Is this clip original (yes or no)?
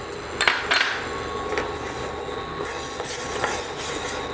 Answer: yes